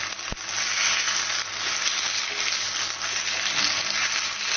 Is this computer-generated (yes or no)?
no